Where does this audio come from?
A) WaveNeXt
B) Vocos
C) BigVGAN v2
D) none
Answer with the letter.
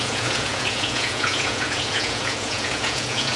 B